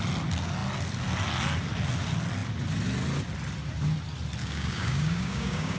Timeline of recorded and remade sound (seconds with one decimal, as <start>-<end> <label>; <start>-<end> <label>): 0.0-4.4 recorded; 4.4-5.8 remade